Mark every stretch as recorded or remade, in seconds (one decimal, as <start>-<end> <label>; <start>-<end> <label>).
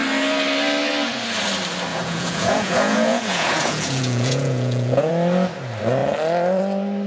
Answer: 0.0-1.9 recorded; 1.9-5.1 remade; 5.1-7.1 recorded